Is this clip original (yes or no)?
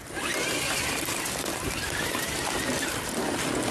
yes